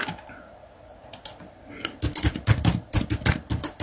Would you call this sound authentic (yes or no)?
yes